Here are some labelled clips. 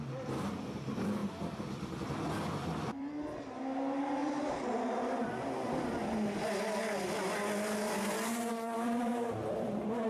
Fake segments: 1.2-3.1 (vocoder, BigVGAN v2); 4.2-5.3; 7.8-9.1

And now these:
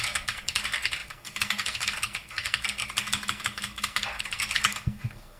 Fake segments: 0.0-5.4 (codec, SNAC)

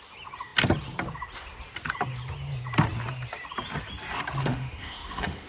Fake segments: 4.4-5.5 (autoencoder, DAC-VAE)